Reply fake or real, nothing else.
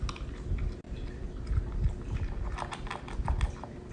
real